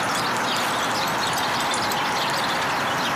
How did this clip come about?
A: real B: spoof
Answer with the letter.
A